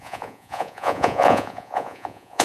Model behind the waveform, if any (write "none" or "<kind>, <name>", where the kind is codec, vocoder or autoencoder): vocoder, Vocos